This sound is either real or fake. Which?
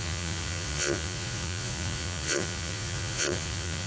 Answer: fake